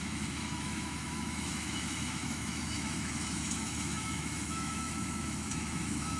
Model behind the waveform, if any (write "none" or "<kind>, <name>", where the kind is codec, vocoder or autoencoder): autoencoder, DAC-VAE